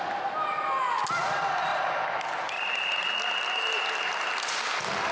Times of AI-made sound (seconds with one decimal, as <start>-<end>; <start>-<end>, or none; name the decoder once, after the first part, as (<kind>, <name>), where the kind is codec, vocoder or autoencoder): none